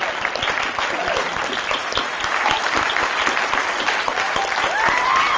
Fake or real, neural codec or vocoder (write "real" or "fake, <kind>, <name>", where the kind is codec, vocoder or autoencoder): real